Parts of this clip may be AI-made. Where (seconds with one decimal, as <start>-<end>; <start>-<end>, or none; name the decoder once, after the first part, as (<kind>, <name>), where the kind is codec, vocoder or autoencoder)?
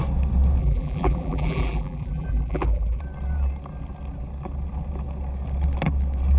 0.6-3.0 (vocoder, BigVGAN v2)